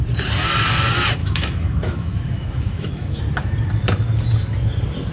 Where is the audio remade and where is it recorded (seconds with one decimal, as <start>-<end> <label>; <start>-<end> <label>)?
0.0-1.2 recorded; 1.2-3.2 remade; 3.2-5.1 recorded

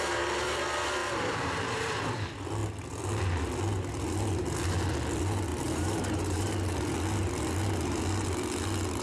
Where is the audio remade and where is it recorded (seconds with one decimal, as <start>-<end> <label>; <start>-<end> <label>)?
0.0-1.0 recorded; 1.0-2.1 remade; 2.1-5.5 recorded; 5.5-6.5 remade; 6.5-9.0 recorded

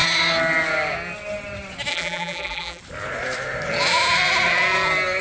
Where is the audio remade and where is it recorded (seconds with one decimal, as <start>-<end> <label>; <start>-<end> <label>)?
0.0-1.9 recorded; 1.9-2.8 remade; 2.8-5.2 recorded

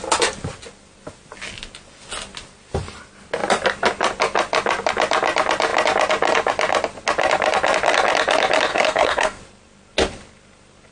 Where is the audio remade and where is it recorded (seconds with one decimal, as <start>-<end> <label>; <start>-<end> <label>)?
0.0-8.7 recorded; 8.7-9.4 remade; 9.4-10.9 recorded

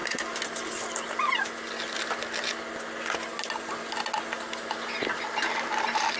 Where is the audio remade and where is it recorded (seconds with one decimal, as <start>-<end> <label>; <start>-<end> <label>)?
0.0-6.2 recorded

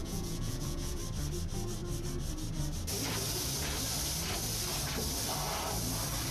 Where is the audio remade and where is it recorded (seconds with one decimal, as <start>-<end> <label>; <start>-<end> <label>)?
0.0-1.0 remade; 1.0-6.3 recorded

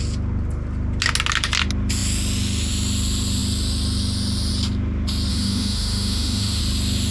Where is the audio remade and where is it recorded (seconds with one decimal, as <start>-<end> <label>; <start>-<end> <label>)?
0.0-5.3 recorded; 5.3-6.6 remade; 6.6-7.1 recorded